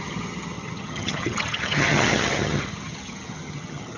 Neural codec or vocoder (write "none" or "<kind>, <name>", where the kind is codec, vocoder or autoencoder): vocoder, HiFi-GAN